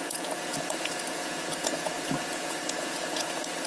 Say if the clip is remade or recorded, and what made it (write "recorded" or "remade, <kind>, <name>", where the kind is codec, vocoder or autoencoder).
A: remade, vocoder, Vocos